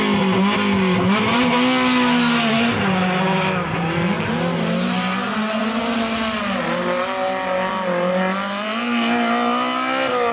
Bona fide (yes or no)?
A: yes